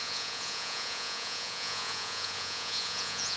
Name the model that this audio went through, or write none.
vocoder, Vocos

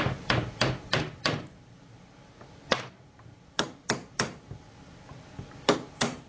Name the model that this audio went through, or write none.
none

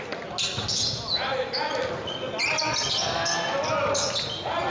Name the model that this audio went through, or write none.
none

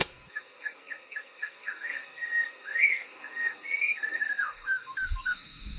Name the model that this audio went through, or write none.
codec, SNAC